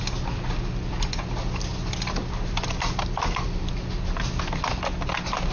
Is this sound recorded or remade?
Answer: recorded